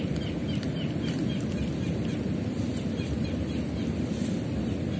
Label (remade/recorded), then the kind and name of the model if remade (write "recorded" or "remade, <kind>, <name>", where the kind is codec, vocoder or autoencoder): recorded